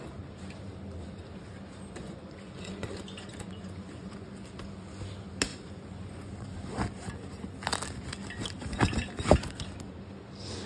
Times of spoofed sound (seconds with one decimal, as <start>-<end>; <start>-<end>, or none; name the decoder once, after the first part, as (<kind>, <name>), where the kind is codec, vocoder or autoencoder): 2.0-4.3 (vocoder, Vocos); 5.5-6.3